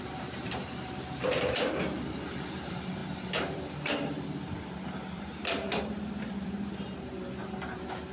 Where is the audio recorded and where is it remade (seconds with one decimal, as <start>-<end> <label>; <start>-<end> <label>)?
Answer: 0.0-8.1 remade